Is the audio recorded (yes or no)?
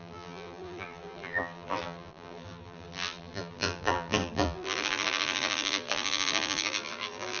no